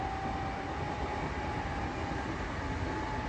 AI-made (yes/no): no